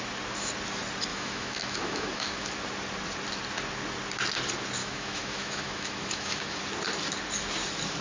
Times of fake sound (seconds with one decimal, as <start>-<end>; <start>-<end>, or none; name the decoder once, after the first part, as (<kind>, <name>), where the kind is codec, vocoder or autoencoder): 1.1-2.5 (autoencoder, DAC-VAE); 4.8-6.6